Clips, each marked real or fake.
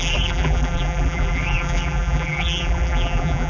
fake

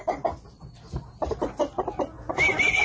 real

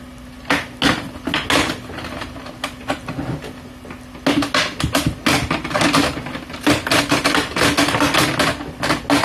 real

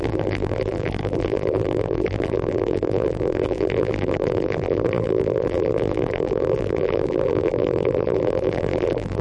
fake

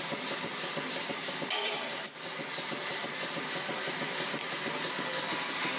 fake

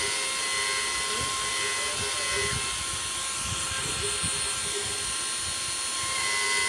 real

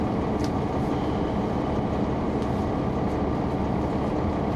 real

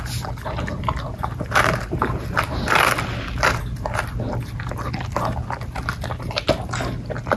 real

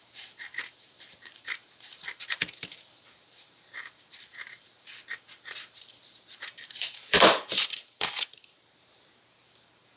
fake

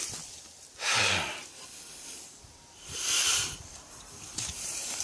fake